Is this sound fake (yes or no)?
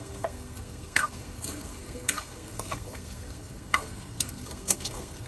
yes